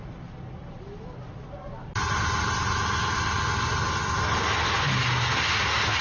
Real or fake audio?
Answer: real